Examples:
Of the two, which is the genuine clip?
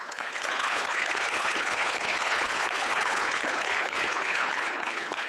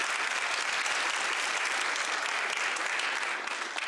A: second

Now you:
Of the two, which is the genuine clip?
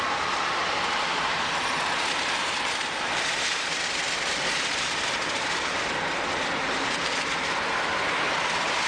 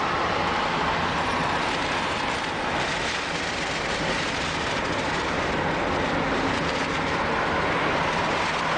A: second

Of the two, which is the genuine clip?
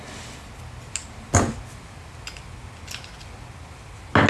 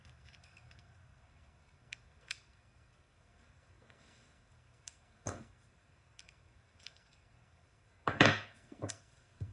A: first